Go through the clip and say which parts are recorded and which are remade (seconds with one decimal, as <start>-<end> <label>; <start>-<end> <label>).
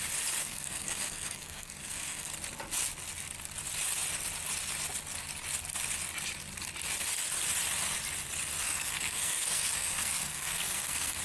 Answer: 0.0-0.4 recorded; 0.4-2.3 remade; 2.3-8.6 recorded; 8.6-11.2 remade